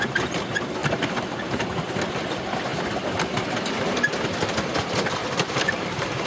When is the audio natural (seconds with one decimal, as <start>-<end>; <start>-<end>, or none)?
0.0-5.2